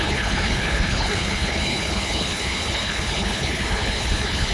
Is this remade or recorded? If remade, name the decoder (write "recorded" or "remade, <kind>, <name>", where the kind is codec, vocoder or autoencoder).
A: remade, codec, HILCodec